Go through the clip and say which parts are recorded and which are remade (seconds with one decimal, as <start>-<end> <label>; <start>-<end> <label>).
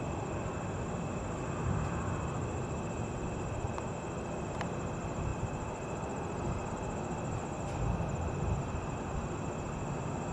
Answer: 0.0-10.3 recorded